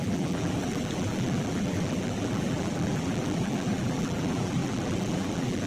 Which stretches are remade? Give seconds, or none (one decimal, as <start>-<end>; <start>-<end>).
0.0-5.7